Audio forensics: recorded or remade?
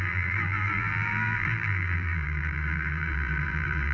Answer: remade